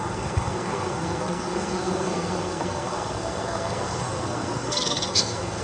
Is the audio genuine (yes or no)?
no